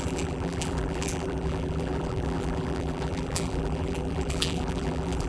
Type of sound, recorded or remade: remade